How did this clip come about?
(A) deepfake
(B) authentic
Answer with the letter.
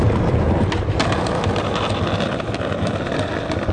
B